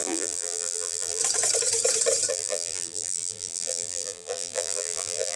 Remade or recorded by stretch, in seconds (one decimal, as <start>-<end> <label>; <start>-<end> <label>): 0.0-1.2 remade; 1.2-2.3 recorded; 2.3-5.4 remade